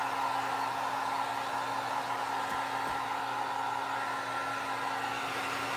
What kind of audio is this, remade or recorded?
recorded